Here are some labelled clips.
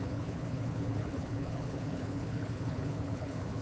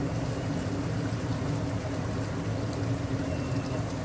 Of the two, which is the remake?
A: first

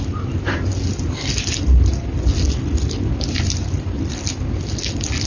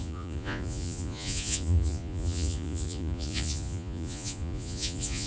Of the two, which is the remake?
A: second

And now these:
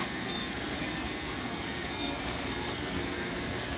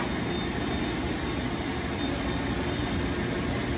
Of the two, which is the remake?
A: first